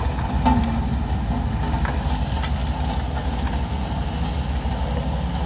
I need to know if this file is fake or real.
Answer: real